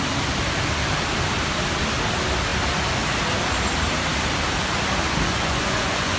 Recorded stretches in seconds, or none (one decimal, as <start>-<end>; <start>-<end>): 0.0-5.3